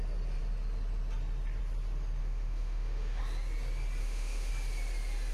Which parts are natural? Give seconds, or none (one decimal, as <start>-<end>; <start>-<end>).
0.0-2.2; 3.2-4.0; 4.5-5.3